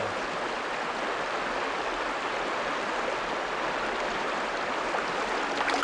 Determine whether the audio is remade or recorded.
recorded